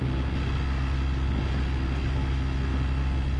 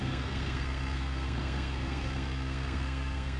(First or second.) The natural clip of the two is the first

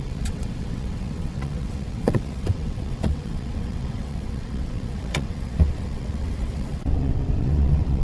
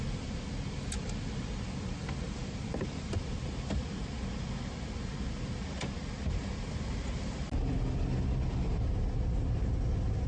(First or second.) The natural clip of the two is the second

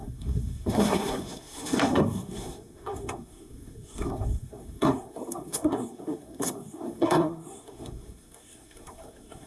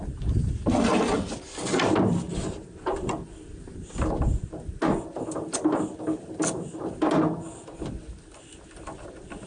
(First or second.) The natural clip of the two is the second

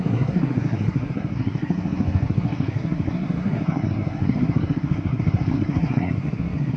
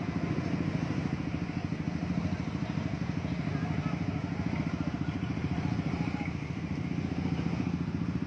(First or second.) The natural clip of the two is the second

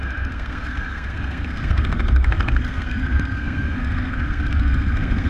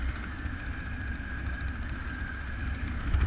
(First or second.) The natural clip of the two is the second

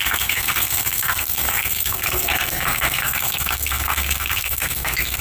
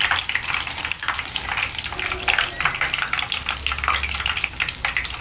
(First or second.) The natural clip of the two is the second